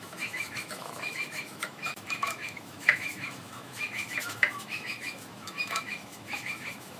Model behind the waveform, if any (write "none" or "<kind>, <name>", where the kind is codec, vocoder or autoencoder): autoencoder, DAC-VAE